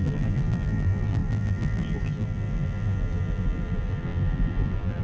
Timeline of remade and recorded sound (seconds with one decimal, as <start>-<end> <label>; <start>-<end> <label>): 0.0-5.0 remade